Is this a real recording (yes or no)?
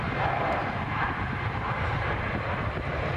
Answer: no